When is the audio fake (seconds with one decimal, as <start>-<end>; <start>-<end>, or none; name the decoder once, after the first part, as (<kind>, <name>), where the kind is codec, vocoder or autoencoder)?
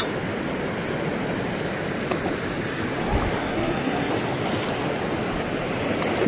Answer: 3.4-4.1 (codec, SNAC)